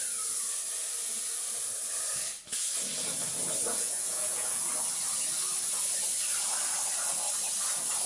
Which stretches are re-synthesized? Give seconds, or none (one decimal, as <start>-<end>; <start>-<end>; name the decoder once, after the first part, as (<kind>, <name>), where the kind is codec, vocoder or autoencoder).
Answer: 3.7-4.7 (vocoder, Vocos)